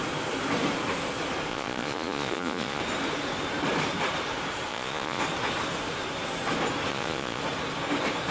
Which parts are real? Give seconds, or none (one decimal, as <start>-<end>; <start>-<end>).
0.0-1.5; 2.8-4.7; 5.2-6.9; 7.4-8.3